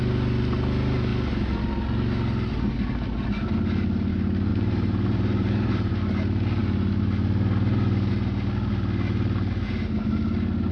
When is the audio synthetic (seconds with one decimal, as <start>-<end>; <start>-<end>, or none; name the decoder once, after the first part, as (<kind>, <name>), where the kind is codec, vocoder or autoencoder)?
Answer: 4.5-5.9 (vocoder, BigVGAN v2)